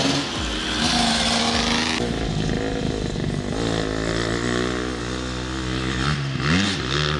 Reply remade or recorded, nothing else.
recorded